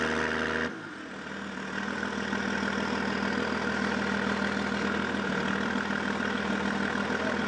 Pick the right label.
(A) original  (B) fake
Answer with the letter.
A